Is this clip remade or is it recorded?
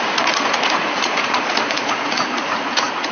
remade